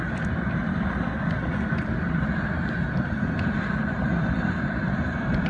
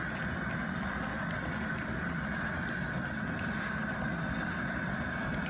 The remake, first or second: first